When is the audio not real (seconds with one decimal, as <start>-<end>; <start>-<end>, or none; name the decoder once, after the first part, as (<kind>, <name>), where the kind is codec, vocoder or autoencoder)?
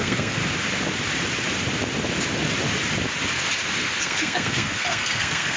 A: 0.0-0.4 (codec, SNAC); 3.8-5.6